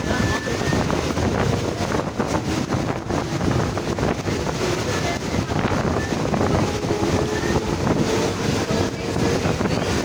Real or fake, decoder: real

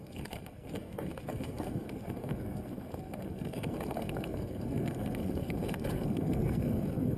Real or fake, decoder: fake, codec, SNAC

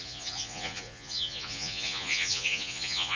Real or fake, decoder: fake, vocoder, Vocos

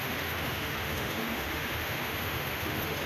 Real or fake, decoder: fake, autoencoder, DAC-VAE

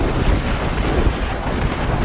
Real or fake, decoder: real